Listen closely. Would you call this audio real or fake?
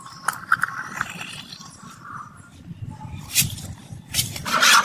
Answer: real